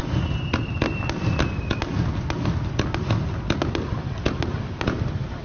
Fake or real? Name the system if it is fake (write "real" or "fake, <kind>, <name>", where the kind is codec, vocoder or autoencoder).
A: real